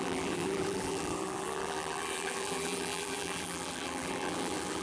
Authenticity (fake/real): fake